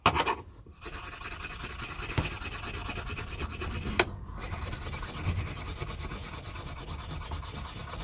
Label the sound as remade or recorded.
remade